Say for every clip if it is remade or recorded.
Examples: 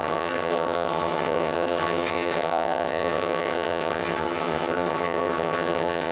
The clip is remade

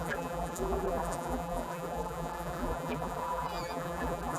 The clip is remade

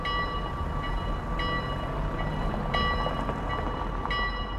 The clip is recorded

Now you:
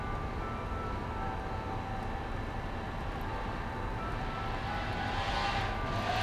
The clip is recorded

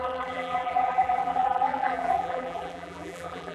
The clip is remade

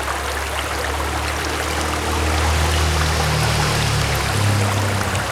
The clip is recorded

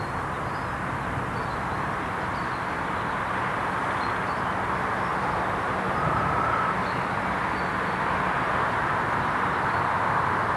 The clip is recorded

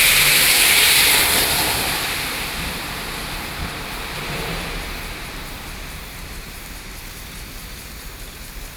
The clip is remade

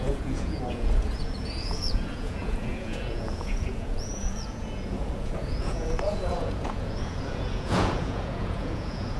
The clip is remade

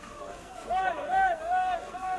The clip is remade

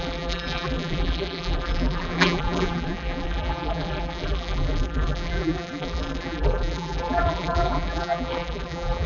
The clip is remade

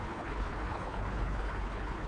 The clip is remade